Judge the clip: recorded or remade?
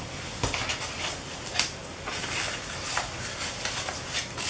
recorded